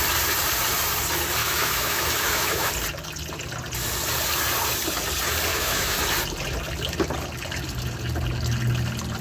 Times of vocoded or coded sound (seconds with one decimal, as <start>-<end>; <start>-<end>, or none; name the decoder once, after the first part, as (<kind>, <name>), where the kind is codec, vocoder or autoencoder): 1.4-2.7 (autoencoder, DAC-VAE); 5.5-6.0